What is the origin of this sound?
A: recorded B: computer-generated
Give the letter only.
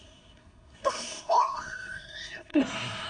B